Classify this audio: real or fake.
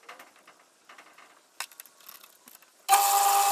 real